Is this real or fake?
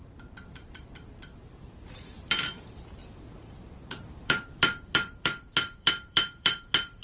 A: fake